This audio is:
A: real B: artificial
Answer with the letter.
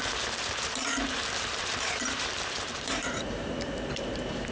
B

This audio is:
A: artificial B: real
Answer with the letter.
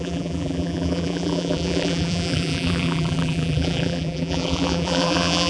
A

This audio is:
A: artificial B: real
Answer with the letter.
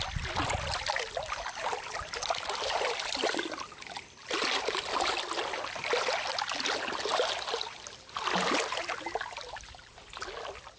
B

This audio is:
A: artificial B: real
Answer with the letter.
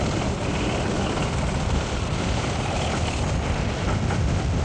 B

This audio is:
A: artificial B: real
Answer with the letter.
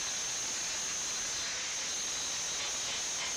B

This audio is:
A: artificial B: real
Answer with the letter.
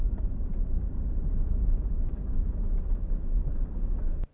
A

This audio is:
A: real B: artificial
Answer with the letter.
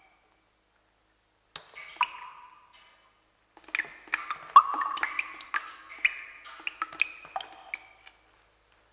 A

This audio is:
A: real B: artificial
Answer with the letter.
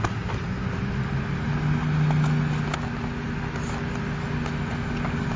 A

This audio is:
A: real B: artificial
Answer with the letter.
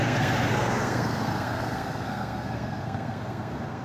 B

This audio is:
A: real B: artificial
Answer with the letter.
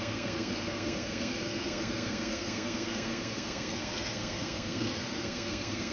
B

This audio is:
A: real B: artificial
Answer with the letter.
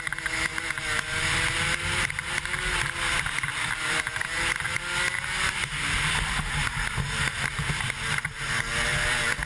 A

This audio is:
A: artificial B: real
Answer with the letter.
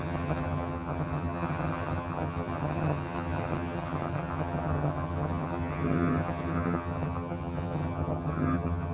A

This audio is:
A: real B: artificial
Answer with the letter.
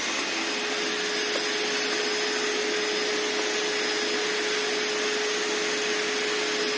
A